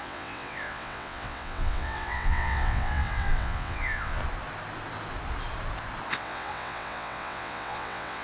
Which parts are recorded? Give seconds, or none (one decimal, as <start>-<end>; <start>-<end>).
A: 4.2-6.1